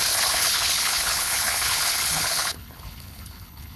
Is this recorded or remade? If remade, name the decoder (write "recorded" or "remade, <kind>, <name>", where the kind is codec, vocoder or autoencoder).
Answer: remade, codec, HILCodec